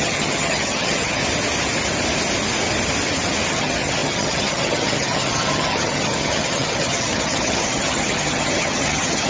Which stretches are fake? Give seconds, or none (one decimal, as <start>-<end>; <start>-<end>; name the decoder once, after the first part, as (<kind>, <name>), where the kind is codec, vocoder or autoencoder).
0.0-1.2 (vocoder, HiFi-GAN); 3.5-9.3